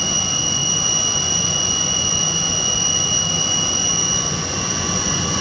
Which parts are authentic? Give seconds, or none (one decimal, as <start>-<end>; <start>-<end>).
none